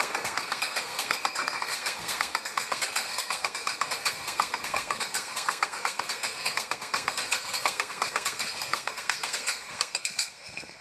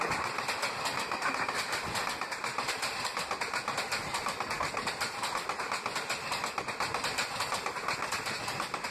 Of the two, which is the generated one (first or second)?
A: first